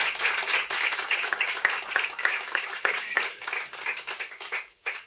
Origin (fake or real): fake